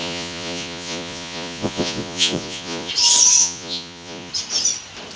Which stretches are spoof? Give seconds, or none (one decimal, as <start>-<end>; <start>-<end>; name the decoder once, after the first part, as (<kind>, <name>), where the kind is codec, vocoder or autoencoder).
0.0-2.9 (vocoder, Vocos); 3.4-4.3